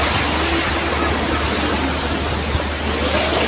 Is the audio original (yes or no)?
yes